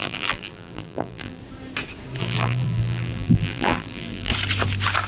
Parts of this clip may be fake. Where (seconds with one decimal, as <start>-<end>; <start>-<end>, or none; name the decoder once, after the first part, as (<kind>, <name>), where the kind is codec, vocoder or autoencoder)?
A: 0.0-1.4 (vocoder, BigVGAN v2); 2.2-4.3